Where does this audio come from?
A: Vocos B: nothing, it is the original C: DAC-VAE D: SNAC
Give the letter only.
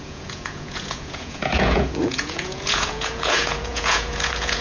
A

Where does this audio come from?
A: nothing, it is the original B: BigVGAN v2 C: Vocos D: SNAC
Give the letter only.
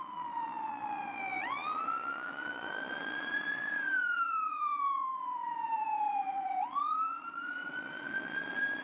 C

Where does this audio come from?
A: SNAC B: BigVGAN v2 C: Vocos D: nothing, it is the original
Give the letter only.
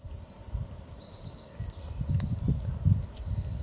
D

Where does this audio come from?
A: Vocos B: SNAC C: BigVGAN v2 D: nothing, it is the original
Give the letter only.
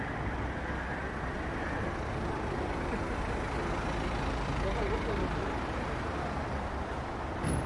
D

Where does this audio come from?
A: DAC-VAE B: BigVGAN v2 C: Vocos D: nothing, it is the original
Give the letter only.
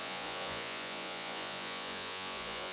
C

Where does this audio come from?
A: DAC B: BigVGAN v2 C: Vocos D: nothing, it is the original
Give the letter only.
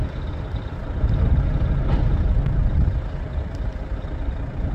D